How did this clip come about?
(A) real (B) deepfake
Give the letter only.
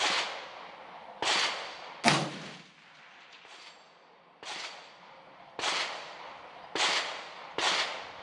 A